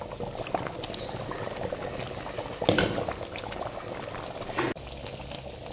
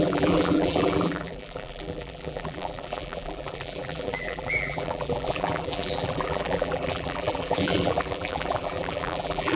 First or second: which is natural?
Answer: first